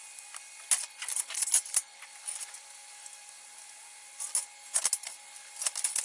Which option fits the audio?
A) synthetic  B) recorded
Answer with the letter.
B